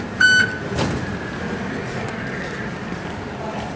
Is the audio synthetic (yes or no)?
no